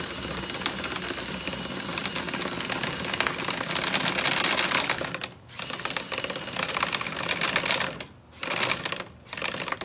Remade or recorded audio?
recorded